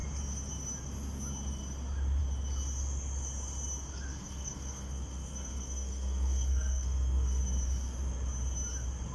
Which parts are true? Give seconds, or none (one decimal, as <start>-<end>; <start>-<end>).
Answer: 0.0-4.1; 7.4-9.1